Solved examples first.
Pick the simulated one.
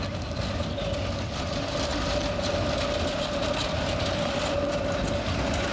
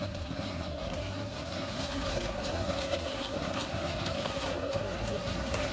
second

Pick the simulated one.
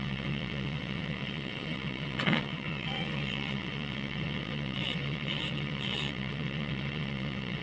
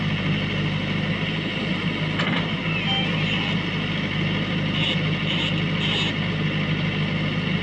first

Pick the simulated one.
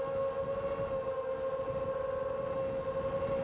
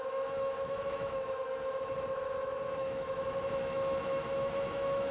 second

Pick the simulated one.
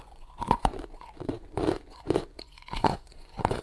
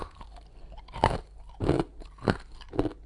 first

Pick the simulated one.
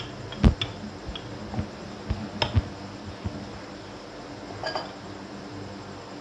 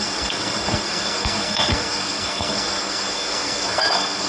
second